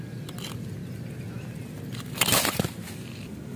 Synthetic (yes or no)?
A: no